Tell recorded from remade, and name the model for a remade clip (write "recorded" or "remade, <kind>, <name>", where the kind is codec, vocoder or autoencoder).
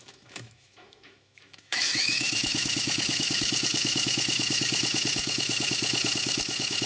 remade, autoencoder, DAC-VAE